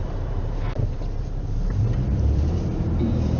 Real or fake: fake